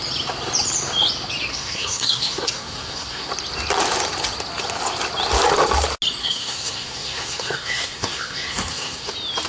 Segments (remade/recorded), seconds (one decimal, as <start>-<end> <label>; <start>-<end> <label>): 0.0-1.5 recorded; 1.5-3.3 remade; 3.3-6.2 recorded; 6.2-9.1 remade; 9.1-9.5 recorded